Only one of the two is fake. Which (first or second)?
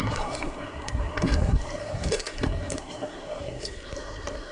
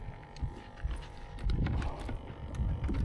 first